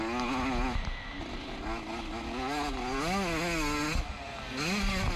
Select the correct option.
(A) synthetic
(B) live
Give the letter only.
B